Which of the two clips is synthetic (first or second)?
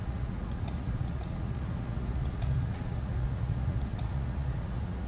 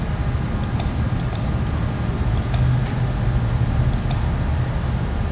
first